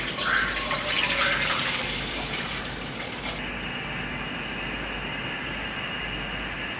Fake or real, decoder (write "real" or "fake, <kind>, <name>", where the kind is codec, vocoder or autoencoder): real